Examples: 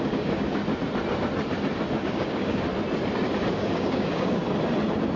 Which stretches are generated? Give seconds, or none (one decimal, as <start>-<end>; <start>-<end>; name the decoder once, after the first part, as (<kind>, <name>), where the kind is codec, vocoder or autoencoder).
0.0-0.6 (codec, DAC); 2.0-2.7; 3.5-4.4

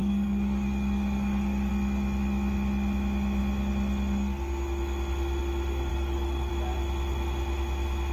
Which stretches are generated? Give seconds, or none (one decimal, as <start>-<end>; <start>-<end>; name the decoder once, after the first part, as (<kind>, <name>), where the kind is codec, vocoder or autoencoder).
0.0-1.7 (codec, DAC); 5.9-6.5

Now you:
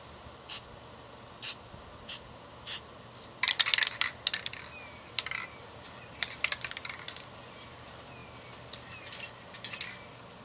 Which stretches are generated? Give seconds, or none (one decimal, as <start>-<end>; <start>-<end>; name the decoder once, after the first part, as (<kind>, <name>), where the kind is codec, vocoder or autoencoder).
none

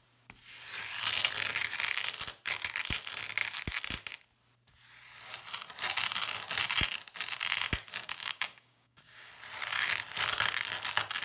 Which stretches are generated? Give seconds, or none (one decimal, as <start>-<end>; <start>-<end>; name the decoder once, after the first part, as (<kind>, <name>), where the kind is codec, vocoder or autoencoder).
8.0-9.3 (codec, DAC)